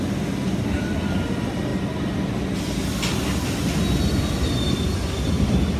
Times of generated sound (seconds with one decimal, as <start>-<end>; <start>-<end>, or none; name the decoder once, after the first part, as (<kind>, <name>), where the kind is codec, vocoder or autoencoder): none